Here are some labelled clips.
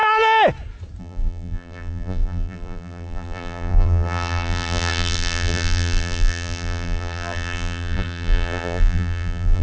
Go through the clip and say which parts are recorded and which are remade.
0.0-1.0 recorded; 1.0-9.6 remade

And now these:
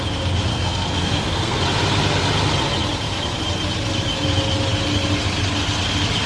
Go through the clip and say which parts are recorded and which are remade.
0.0-0.5 recorded; 0.5-1.6 remade; 1.6-6.3 recorded

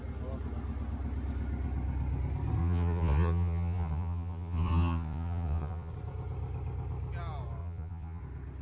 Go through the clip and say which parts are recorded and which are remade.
0.0-2.6 recorded; 2.6-5.9 remade; 5.9-7.6 recorded; 7.6-8.2 remade; 8.2-8.6 recorded

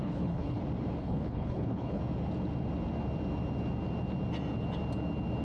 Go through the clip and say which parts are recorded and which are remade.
0.0-0.6 remade; 0.6-1.0 recorded; 1.0-2.0 remade; 2.0-5.4 recorded